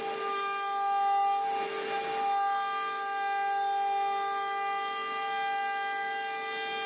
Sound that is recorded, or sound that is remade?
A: recorded